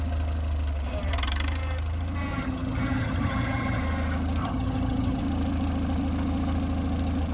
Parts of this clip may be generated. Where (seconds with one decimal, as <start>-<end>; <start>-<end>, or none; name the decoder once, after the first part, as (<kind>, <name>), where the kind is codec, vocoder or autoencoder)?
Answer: 2.3-3.8 (vocoder, HiFi-GAN); 4.4-5.2